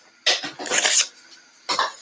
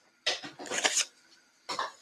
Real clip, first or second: first